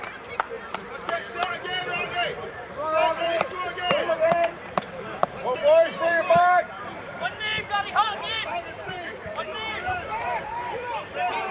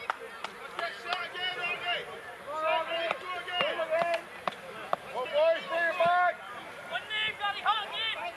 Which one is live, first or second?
second